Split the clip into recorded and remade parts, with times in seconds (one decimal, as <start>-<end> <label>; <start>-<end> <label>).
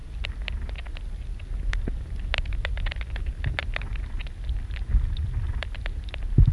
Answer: 0.0-6.5 recorded